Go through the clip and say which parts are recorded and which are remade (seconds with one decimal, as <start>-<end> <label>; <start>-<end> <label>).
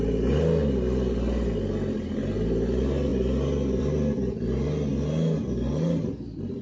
0.0-6.6 recorded